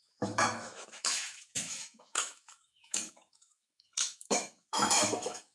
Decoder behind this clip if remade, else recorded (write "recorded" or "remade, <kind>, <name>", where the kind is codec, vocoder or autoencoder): remade, autoencoder, DAC-VAE